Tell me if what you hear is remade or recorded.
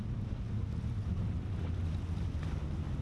recorded